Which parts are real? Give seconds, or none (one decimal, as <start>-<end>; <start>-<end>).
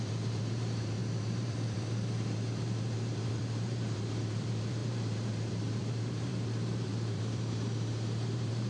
none